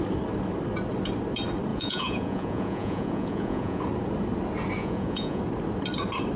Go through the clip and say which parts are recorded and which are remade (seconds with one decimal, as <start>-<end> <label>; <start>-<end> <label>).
0.0-1.7 recorded; 1.7-3.8 remade; 3.8-4.8 recorded; 4.8-5.4 remade; 5.4-6.4 recorded